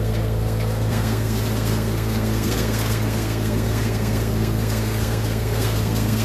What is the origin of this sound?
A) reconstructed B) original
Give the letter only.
A